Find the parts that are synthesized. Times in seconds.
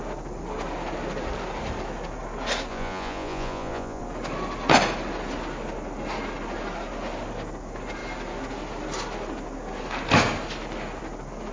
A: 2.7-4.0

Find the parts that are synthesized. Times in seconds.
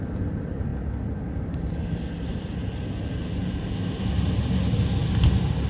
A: none